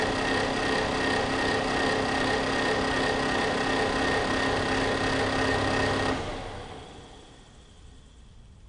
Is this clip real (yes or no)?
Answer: yes